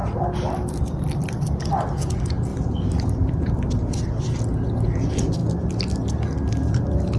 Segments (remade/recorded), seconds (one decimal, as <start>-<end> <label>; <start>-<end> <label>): 0.0-0.7 recorded; 0.7-2.5 remade; 2.5-3.1 recorded; 3.1-5.4 remade; 5.4-6.5 recorded; 6.5-7.2 remade

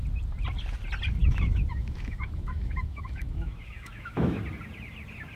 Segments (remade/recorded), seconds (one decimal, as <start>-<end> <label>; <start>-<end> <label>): 0.0-1.2 recorded; 1.2-4.4 remade; 4.4-5.4 recorded

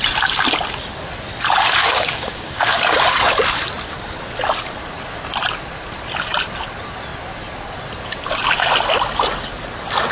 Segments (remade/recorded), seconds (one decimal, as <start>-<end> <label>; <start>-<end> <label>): 0.0-1.8 recorded; 1.8-2.8 remade; 2.8-10.1 recorded